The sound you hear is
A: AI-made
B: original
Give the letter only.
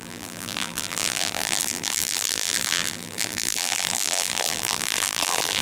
A